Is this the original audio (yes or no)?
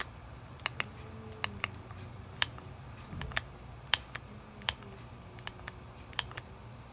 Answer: yes